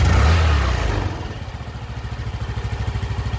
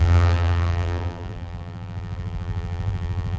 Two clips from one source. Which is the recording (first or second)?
first